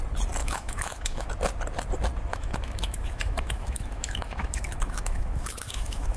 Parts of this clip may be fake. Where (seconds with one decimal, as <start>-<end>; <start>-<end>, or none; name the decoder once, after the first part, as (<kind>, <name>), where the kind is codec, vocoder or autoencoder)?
0.4-1.3 (autoencoder, DAC-VAE); 2.3-6.2